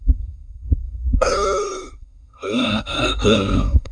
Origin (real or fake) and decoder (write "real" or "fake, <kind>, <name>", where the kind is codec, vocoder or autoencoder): fake, codec, SNAC